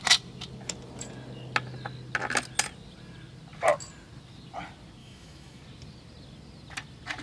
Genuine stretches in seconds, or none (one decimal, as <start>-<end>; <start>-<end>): 0.0-5.0; 5.6-7.2